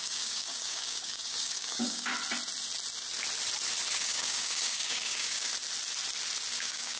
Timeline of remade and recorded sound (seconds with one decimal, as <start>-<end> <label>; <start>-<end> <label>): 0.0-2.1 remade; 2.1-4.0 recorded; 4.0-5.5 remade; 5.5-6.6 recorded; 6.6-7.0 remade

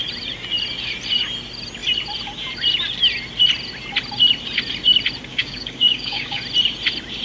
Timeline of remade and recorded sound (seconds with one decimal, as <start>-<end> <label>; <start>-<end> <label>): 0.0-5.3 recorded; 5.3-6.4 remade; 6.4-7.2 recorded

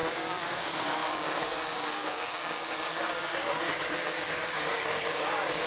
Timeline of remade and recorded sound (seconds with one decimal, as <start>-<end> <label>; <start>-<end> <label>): 0.0-5.7 remade